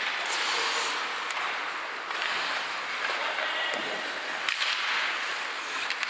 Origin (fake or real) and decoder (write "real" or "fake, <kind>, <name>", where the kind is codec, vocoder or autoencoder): fake, vocoder, BigVGAN v2